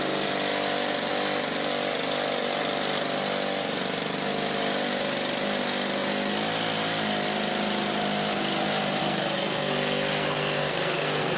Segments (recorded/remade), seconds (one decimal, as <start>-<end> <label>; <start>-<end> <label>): 0.0-9.0 recorded; 9.0-11.4 remade